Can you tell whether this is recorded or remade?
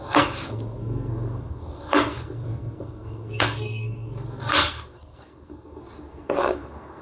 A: remade